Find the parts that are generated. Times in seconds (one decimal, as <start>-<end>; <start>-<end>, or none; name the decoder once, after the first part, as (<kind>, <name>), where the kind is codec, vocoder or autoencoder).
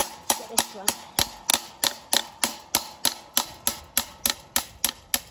0.0-0.5 (vocoder, BigVGAN v2)